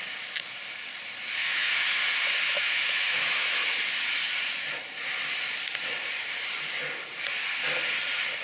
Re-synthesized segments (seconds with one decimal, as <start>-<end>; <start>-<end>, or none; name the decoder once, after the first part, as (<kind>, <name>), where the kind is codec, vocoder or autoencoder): 1.4-3.6 (autoencoder, DAC-VAE)